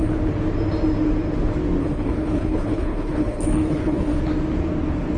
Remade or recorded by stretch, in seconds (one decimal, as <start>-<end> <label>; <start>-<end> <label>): 0.0-1.8 recorded; 1.8-4.2 remade; 4.2-5.2 recorded